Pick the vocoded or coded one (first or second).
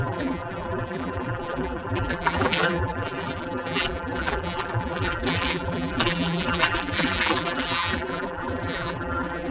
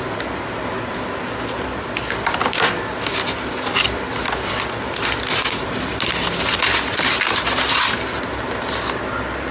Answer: first